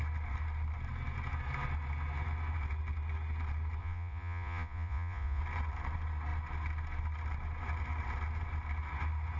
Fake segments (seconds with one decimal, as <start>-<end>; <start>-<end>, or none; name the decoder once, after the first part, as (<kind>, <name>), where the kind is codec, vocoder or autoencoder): 3.8-5.4 (vocoder, Vocos)